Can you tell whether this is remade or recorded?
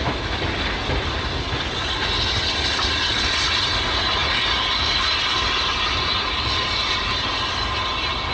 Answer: recorded